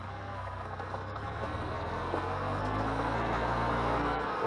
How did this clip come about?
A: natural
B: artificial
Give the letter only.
B